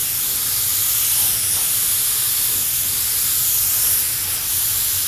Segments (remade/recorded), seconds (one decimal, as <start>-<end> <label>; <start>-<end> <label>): 0.0-5.1 recorded